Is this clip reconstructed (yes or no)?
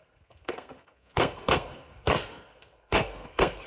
yes